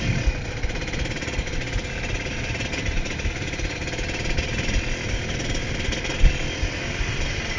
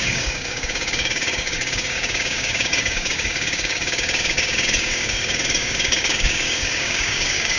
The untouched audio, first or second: first